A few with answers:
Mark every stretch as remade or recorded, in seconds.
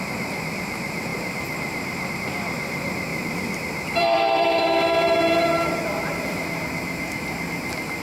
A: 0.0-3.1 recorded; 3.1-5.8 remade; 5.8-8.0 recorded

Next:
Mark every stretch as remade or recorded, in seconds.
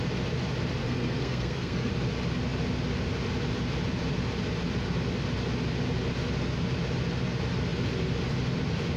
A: 0.0-0.8 recorded; 0.8-1.9 remade; 1.9-9.0 recorded